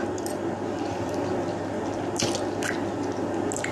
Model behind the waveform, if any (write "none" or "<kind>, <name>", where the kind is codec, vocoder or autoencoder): none